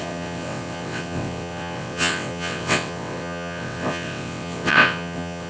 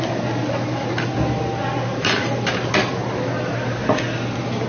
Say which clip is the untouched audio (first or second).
second